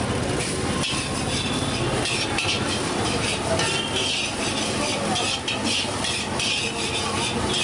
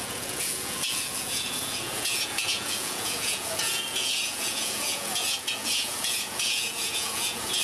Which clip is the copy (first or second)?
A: second